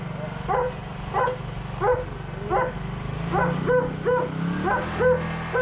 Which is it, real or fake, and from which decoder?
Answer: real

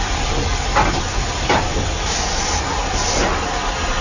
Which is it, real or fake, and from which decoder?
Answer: real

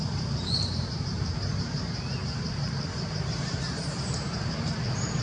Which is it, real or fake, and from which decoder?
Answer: fake, vocoder, BigVGAN v2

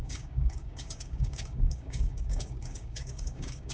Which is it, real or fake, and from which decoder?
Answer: fake, codec, DAC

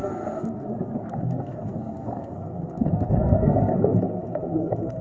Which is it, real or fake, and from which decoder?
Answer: fake, codec, SNAC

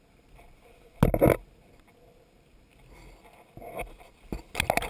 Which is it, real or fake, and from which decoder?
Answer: real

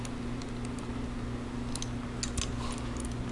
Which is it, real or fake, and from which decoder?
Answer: real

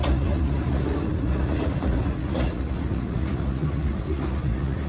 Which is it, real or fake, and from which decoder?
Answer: fake, vocoder, Vocos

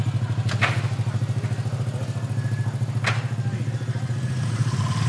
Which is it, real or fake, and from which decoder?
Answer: real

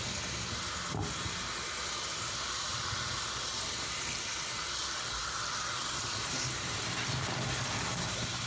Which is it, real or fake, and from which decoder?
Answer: real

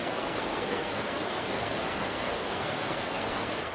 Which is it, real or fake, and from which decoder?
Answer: fake, codec, SNAC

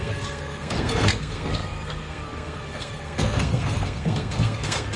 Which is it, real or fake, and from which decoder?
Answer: fake, codec, SNAC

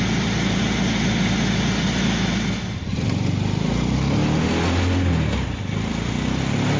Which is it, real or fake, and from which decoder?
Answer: real